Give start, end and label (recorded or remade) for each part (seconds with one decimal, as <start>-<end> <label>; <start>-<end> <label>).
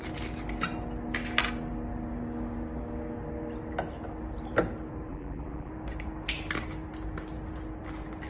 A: 0.0-5.1 recorded; 5.1-5.7 remade; 5.7-8.3 recorded